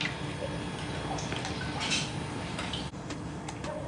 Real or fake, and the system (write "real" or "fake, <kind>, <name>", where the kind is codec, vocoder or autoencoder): real